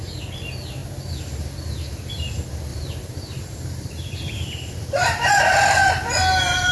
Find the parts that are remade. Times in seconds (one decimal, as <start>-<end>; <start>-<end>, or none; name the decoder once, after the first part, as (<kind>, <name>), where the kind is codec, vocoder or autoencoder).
2.7-5.3 (vocoder, BigVGAN v2)